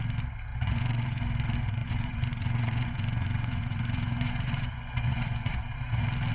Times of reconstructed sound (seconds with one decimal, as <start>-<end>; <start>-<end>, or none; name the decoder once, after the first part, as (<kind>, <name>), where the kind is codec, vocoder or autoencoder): 0.5-1.2 (vocoder, Vocos); 1.8-5.6